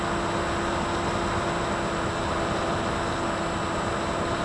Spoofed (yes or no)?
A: no